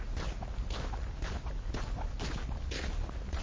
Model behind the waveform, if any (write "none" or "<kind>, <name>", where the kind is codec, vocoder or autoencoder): none